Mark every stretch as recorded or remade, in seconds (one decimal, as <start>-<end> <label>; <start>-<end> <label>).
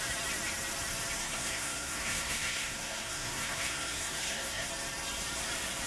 0.0-1.2 recorded; 1.2-4.7 remade; 4.7-5.9 recorded